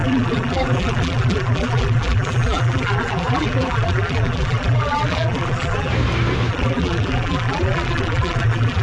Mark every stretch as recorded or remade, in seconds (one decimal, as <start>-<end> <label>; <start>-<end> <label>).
0.0-5.9 remade; 5.9-6.5 recorded; 6.5-8.8 remade